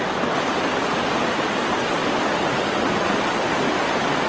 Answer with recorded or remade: recorded